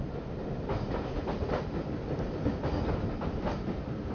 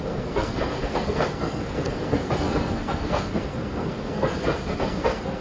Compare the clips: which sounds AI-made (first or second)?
second